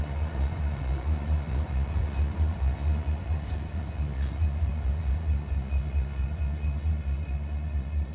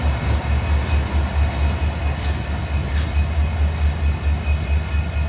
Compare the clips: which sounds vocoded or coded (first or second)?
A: first